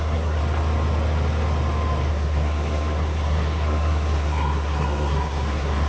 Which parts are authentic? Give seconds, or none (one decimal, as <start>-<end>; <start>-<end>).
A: 0.4-2.1